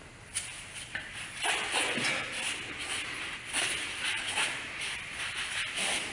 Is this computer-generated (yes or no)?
no